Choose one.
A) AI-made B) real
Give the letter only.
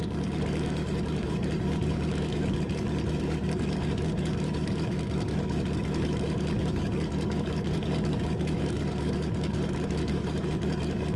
A